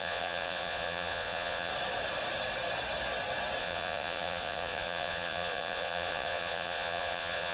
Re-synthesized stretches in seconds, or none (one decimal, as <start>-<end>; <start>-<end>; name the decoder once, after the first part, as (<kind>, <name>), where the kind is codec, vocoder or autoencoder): 0.0-1.7 (vocoder, Vocos); 3.6-7.5